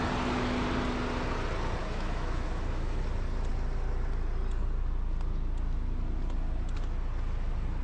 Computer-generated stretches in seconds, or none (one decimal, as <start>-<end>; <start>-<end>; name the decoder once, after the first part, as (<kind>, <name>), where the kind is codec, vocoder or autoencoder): 1.8-3.0 (autoencoder, DAC-VAE)